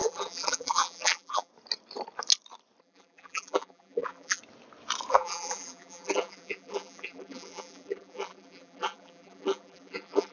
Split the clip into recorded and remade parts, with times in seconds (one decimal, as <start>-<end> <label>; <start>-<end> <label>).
0.0-1.5 remade; 1.5-2.8 recorded; 2.8-4.4 remade; 4.4-5.1 recorded; 5.1-10.3 remade